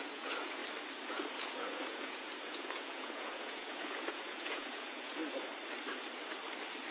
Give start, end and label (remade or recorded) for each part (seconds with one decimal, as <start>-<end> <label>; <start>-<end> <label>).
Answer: 0.0-0.6 remade; 0.6-1.1 recorded; 1.1-5.2 remade; 5.2-6.9 recorded